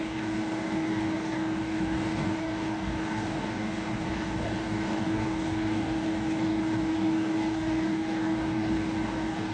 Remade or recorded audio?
remade